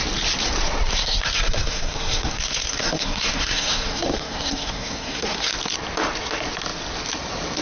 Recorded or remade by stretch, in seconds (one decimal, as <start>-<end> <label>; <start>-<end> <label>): 0.0-0.9 recorded; 0.9-5.5 remade; 5.5-7.6 recorded